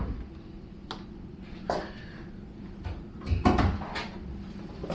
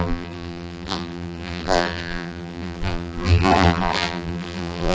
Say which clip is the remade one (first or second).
second